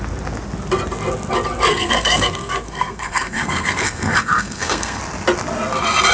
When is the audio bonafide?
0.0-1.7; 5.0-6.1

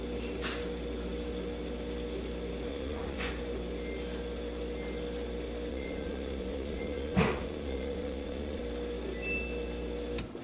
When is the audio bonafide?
0.0-2.7; 3.3-5.7; 8.6-10.4

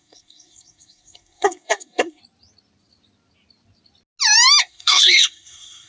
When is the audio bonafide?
2.2-4.6

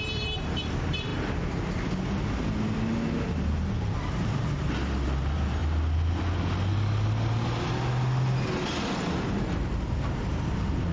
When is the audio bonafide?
1.1-3.2; 5.6-9.4

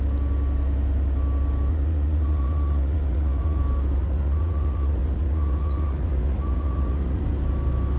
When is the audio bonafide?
0.0-1.7; 3.6-4.0; 7.2-8.0